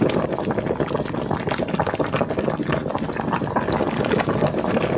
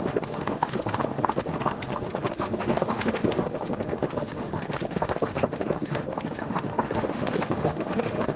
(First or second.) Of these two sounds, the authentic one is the first